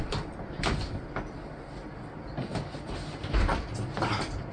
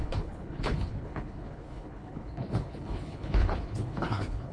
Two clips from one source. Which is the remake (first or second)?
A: second